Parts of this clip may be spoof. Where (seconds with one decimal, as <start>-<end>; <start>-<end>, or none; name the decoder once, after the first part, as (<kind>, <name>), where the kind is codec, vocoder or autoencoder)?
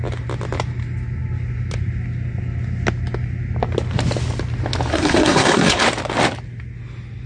4.9-5.8 (codec, SNAC)